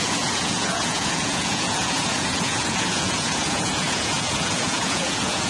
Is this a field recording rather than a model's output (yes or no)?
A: no